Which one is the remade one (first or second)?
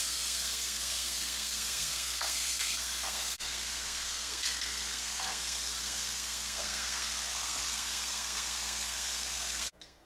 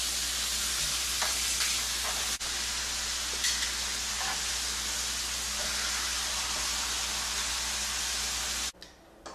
first